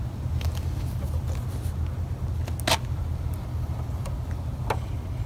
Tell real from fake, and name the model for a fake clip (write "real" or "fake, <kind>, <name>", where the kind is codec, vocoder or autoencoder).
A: real